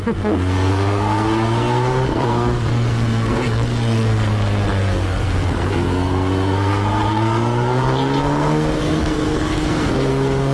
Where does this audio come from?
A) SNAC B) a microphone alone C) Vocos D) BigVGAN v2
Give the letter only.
A